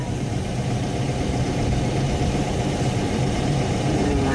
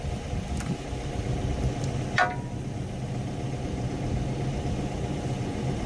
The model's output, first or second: first